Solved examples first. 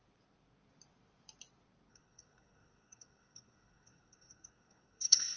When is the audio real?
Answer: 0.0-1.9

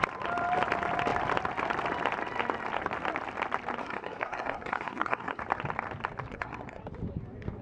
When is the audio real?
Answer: 0.0-3.8; 5.4-6.3; 6.8-7.6

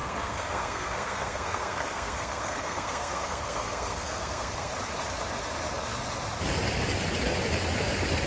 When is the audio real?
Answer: 4.7-8.3

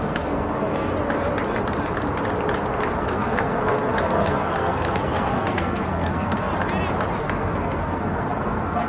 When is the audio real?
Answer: 0.9-2.9; 6.5-7.2